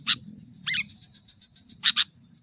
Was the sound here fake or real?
fake